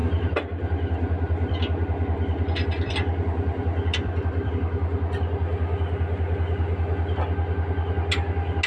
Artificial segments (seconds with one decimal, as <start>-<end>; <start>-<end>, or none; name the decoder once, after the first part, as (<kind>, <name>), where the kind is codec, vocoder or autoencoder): 0.0-4.5 (vocoder, BigVGAN v2)